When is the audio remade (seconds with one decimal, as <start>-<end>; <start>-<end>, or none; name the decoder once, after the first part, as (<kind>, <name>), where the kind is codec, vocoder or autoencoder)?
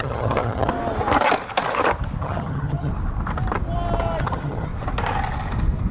0.0-0.7 (vocoder, HiFi-GAN); 2.2-2.9; 4.2-4.7